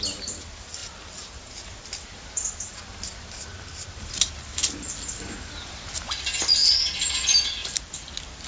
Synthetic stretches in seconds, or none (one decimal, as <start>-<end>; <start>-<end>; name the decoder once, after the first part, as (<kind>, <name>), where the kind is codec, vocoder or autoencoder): 0.0-0.8 (vocoder, BigVGAN v2); 1.5-6.6; 7.1-8.5